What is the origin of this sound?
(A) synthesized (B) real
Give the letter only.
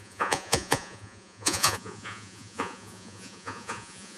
A